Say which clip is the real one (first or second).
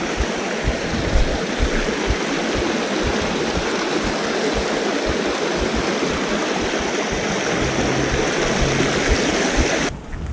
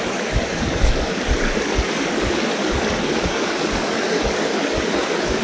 first